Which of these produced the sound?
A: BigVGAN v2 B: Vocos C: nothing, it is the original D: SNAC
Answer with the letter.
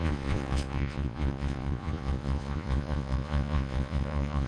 B